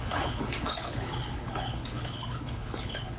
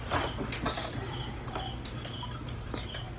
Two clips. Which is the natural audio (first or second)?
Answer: second